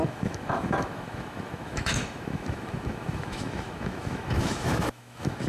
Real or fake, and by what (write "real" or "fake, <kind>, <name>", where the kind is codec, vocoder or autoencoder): fake, autoencoder, DAC-VAE